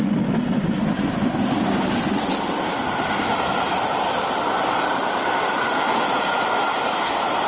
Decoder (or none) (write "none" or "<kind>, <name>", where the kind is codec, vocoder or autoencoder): none